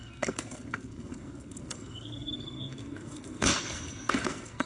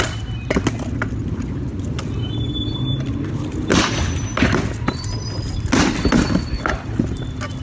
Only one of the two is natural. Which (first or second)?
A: second